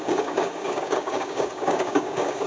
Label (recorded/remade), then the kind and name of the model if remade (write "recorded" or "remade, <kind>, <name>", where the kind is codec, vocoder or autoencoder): remade, codec, DAC